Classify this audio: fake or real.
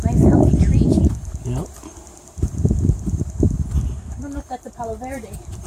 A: real